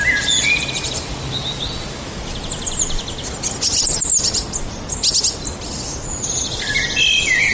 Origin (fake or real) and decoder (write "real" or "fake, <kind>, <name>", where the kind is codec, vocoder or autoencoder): real